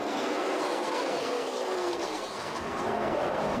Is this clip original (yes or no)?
no